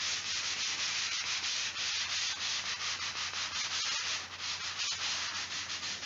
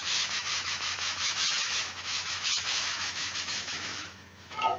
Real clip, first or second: first